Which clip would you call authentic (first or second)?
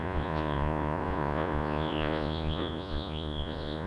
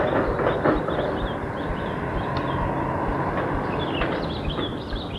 second